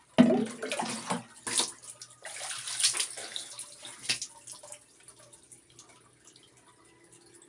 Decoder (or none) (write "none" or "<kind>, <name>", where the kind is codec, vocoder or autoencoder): none